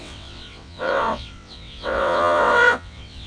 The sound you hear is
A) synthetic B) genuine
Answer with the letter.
A